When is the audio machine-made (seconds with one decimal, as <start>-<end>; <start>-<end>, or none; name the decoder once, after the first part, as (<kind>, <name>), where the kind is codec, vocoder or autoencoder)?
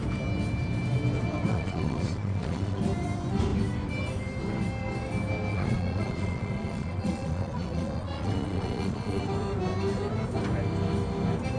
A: 1.5-2.8 (vocoder, Vocos); 5.5-9.2